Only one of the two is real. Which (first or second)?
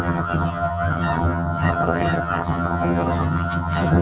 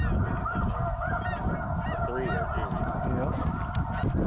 second